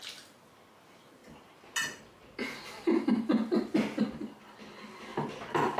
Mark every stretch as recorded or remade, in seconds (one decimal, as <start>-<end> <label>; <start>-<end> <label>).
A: 0.0-5.8 recorded

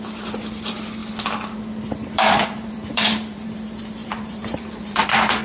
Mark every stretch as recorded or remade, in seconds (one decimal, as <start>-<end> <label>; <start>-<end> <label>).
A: 0.0-2.0 recorded; 2.0-3.5 remade; 3.5-4.0 recorded; 4.0-5.4 remade